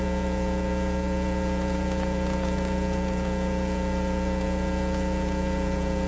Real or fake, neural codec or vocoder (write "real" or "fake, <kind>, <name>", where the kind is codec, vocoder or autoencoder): fake, vocoder, Vocos